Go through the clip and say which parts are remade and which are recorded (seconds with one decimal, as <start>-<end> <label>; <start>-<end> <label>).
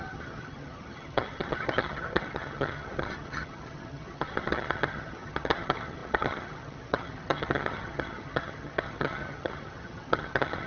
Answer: 0.0-10.7 remade